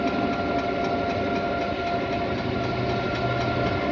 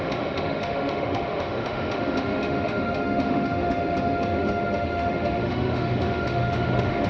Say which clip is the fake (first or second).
second